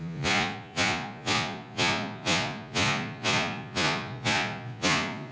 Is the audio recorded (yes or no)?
no